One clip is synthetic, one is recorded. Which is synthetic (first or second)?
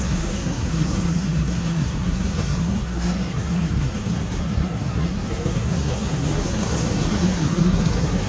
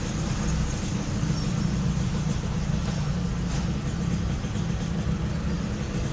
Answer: first